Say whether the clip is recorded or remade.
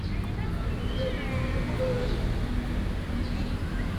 recorded